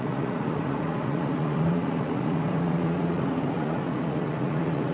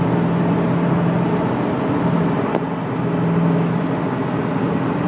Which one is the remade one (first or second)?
first